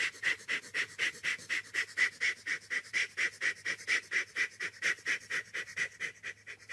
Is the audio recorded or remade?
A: recorded